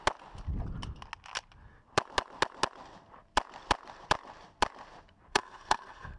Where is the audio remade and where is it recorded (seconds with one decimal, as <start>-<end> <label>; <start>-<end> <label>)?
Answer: 0.0-5.3 recorded; 5.3-6.2 remade